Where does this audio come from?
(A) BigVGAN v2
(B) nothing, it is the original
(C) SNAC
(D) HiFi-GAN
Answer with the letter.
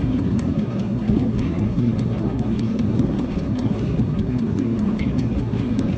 C